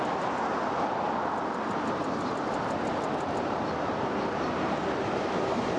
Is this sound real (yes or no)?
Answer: yes